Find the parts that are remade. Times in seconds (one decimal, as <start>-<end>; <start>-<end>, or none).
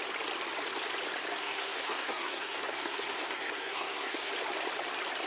1.4-4.3